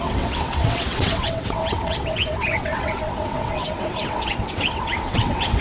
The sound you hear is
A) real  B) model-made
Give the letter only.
B